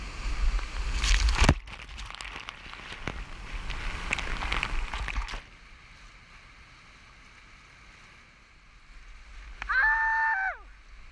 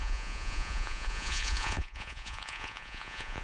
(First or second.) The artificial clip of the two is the second